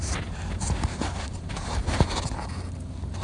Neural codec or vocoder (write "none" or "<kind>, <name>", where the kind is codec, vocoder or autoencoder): none